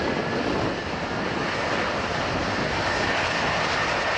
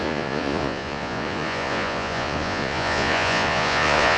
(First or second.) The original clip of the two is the first